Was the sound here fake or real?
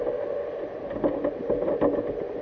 real